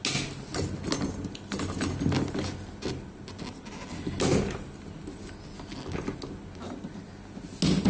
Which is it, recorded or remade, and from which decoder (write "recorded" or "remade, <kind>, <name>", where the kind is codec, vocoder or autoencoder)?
recorded